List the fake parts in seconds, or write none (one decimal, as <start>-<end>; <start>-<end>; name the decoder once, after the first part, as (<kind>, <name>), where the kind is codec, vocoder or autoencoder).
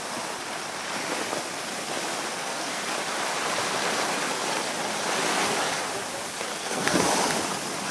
2.3-2.8 (codec, SNAC); 6.5-7.0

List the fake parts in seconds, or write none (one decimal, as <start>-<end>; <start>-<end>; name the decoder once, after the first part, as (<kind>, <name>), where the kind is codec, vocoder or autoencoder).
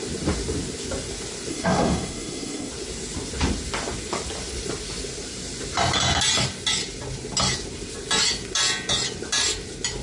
1.5-2.7 (codec, SNAC)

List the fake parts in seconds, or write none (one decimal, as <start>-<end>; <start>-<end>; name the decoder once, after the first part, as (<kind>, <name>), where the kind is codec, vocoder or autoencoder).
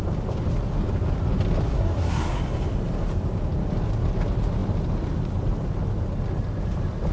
1.7-2.4 (codec, SNAC)